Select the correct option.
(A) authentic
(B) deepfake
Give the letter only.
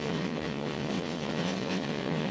B